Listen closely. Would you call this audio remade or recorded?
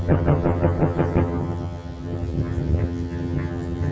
remade